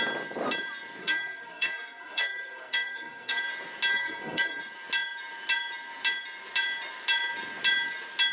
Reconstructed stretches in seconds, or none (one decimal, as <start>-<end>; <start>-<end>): 1.0-3.4; 3.9-4.6